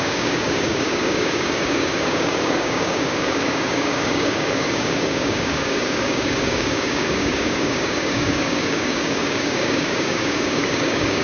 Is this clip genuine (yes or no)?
no